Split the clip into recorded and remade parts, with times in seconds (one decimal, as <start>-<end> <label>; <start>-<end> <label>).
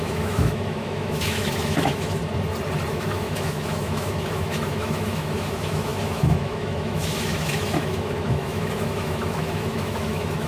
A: 0.0-2.2 remade; 2.2-2.9 recorded; 2.9-10.5 remade